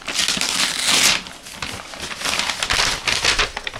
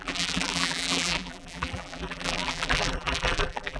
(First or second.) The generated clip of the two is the second